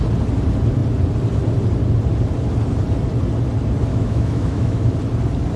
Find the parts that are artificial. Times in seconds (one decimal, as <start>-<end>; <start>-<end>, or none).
3.9-4.9